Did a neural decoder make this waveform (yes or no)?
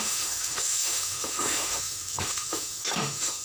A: yes